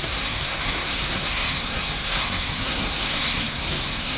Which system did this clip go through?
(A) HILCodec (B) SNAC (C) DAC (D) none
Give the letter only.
B